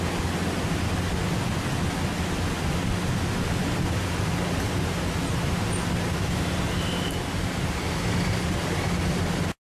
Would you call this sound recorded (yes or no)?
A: yes